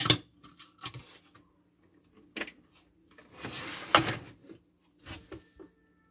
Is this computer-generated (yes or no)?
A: no